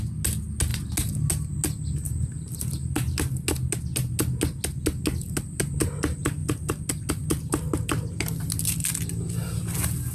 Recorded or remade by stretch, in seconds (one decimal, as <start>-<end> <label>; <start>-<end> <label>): 0.0-10.1 recorded